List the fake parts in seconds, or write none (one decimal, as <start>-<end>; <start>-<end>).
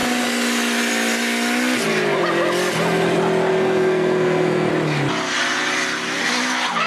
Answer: 3.5-4.7